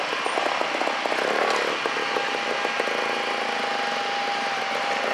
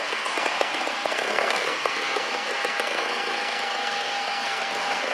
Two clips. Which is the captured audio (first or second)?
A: first